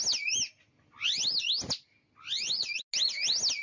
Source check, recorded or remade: recorded